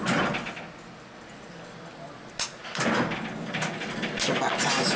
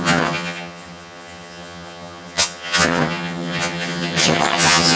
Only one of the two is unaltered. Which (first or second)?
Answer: first